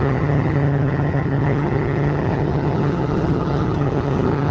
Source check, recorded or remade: remade